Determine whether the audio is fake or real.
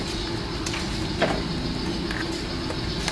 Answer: real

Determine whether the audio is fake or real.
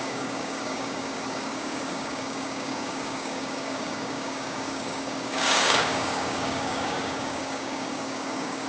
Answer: fake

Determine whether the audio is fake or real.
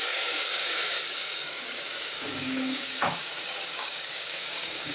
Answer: fake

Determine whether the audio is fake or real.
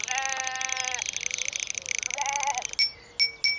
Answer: real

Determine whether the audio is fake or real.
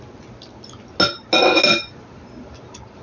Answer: real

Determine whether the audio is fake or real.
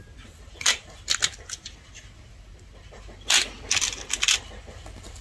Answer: real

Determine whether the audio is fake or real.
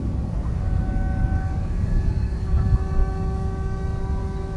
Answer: fake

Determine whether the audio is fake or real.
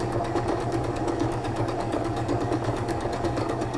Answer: fake